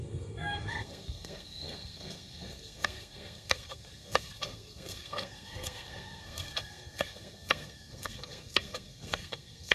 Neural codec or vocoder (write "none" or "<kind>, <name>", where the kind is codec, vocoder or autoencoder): codec, SNAC